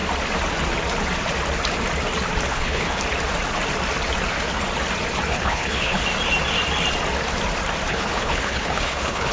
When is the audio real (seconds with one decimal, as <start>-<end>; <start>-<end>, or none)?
0.0-2.5; 3.0-5.3; 6.0-7.9